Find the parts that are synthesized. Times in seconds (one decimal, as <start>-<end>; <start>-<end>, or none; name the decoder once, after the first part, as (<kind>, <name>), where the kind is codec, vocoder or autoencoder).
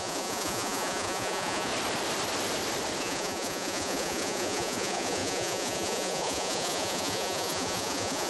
0.0-1.7 (vocoder, Vocos); 3.0-8.3